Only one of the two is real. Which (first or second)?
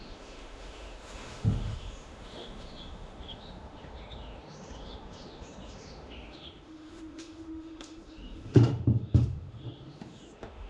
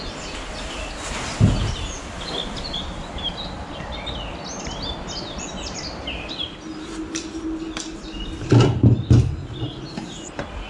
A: second